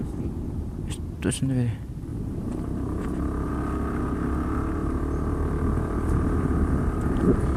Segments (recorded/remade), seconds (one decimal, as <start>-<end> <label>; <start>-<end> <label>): 0.0-1.1 remade; 1.1-2.1 recorded; 2.1-3.5 remade; 3.5-4.8 recorded; 4.8-7.6 remade